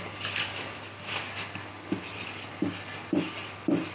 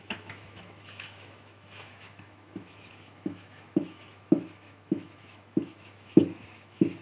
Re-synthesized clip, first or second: second